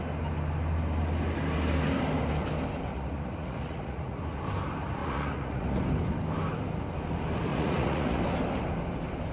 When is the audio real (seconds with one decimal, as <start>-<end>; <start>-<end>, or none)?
0.0-2.9; 4.2-5.0; 5.8-7.5; 8.2-9.3